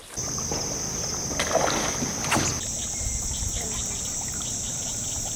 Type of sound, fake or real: real